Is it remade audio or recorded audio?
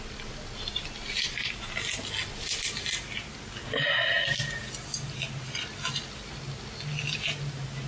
recorded